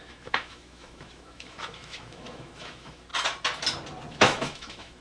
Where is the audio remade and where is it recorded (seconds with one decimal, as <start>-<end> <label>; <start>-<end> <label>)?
0.0-3.1 remade; 3.1-4.1 recorded; 4.1-5.0 remade

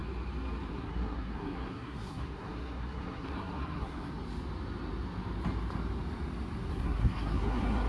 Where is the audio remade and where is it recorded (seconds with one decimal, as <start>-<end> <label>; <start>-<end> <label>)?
0.0-0.7 recorded; 0.7-4.1 remade; 4.1-6.7 recorded; 6.7-7.9 remade

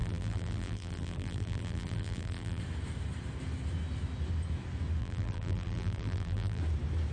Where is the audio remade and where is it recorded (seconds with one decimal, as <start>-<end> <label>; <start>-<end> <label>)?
0.0-2.6 remade; 2.6-5.0 recorded; 5.0-6.6 remade; 6.6-7.1 recorded

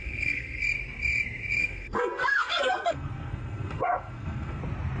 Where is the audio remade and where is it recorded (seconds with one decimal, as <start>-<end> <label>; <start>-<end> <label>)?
0.0-0.6 remade; 0.6-1.6 recorded; 1.6-4.6 remade; 4.6-5.0 recorded

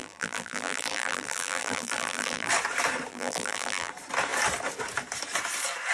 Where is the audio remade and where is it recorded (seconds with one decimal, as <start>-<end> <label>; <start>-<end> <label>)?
0.0-2.5 remade; 2.5-3.1 recorded; 3.1-3.9 remade; 3.9-5.9 recorded

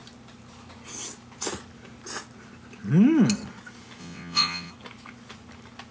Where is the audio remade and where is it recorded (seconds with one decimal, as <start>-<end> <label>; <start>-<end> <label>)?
0.0-4.0 recorded; 4.0-4.7 remade; 4.7-5.9 recorded

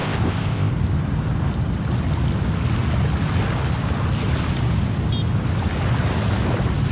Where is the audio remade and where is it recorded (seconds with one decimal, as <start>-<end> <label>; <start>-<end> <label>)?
0.0-0.7 remade; 0.7-6.9 recorded

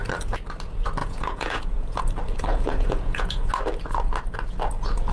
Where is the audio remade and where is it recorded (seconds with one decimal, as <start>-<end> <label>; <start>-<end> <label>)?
0.0-1.0 recorded; 1.0-2.0 remade; 2.0-2.5 recorded; 2.5-3.5 remade; 3.5-5.1 recorded